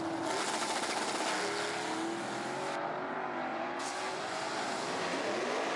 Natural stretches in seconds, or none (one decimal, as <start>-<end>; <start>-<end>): 0.0-3.5; 4.5-5.8